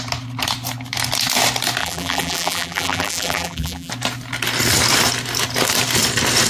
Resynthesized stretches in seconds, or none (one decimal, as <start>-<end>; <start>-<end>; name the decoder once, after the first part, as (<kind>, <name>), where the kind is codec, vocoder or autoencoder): 1.8-3.9 (vocoder, BigVGAN v2)